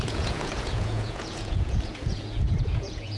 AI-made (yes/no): yes